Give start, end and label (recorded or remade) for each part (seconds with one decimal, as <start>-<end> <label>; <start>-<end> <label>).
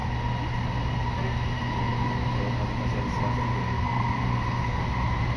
0.0-3.6 recorded; 3.6-4.8 remade; 4.8-5.4 recorded